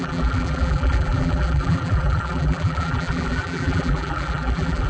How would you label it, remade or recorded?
remade